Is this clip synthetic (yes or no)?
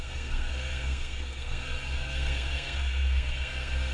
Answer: yes